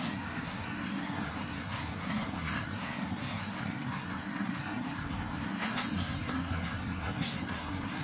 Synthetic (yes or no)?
yes